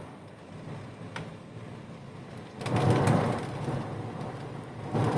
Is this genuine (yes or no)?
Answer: yes